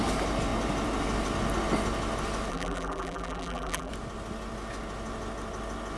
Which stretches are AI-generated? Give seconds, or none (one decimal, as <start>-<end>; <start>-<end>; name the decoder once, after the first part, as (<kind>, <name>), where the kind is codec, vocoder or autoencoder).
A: 2.5-3.9 (vocoder, BigVGAN v2)